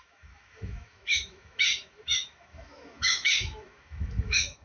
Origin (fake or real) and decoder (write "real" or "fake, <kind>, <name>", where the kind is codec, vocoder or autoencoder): fake, autoencoder, DAC-VAE